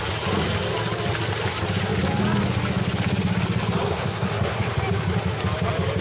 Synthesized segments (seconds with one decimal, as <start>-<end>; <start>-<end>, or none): 3.8-4.8